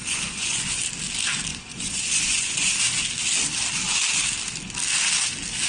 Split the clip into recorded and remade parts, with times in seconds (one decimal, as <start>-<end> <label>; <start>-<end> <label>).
0.0-0.8 remade; 0.8-1.5 recorded; 1.5-2.7 remade; 2.7-5.7 recorded